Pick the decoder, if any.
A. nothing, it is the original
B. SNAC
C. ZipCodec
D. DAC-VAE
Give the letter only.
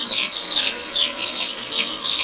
B